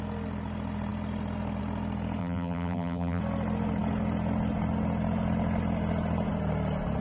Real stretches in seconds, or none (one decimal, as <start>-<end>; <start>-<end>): 0.0-2.2; 3.2-7.0